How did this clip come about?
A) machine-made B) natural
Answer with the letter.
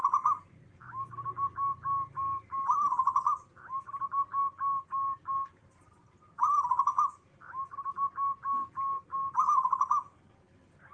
B